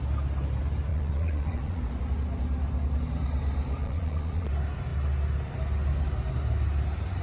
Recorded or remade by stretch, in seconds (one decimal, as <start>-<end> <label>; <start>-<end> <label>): 0.0-0.9 recorded; 0.9-1.8 remade; 1.8-3.8 recorded; 3.8-4.5 remade; 4.5-7.2 recorded